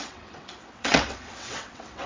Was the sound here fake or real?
fake